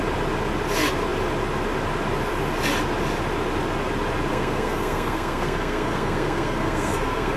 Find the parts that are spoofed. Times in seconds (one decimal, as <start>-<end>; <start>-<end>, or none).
4.3-7.4